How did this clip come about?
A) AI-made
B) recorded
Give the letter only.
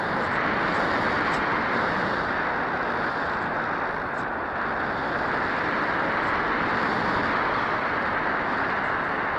B